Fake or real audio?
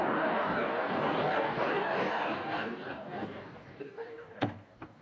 fake